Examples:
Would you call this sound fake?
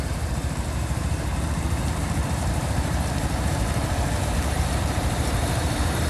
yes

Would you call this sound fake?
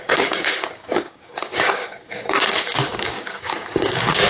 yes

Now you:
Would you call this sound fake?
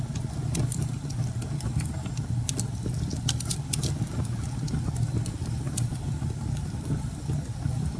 no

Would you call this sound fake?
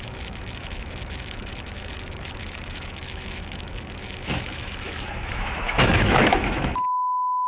yes